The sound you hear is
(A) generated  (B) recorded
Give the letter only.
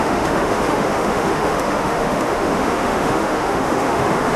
A